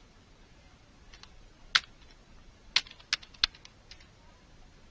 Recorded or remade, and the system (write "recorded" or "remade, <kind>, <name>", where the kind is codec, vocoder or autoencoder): recorded